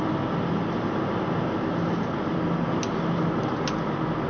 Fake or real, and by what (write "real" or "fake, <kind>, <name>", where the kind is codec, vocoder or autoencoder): real